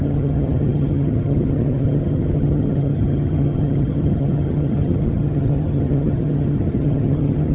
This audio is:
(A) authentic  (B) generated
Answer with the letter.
B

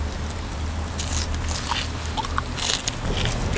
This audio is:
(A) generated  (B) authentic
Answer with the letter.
B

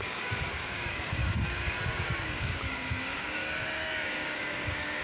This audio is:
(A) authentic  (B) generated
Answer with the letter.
B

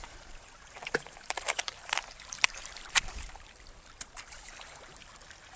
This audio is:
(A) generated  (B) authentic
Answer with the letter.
A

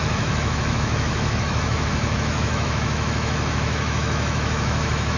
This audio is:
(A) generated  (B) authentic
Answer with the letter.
A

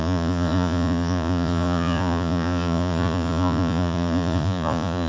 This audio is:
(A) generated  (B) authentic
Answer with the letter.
A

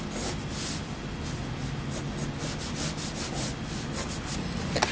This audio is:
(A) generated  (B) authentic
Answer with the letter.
B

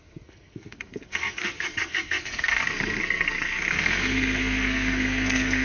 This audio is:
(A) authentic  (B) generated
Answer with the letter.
B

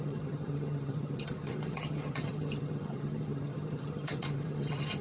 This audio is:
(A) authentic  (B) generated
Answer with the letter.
B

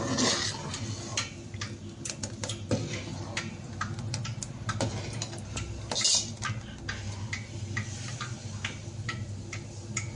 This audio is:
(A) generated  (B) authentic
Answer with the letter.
B